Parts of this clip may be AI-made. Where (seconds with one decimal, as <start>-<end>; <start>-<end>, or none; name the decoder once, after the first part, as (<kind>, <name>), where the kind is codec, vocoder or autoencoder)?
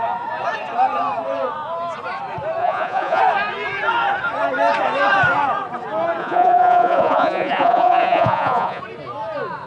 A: 2.6-3.2 (vocoder, Vocos); 6.2-8.8